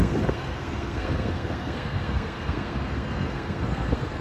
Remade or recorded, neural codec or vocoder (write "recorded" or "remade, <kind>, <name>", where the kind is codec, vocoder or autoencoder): remade, codec, SNAC